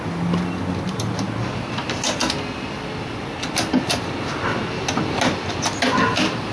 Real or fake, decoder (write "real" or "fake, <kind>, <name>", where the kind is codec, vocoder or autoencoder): real